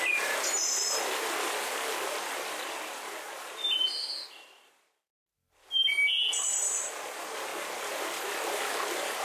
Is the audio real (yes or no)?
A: yes